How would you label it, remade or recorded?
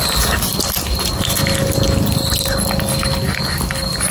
recorded